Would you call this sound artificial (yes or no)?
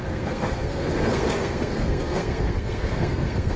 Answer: yes